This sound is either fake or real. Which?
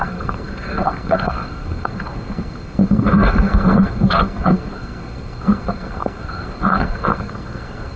fake